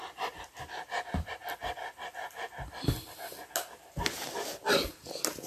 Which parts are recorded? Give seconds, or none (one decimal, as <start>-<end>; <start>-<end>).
0.0-5.5